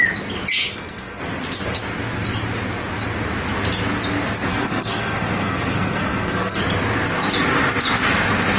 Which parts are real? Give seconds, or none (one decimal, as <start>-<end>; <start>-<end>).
0.0-0.6; 1.2-4.5; 6.6-8.6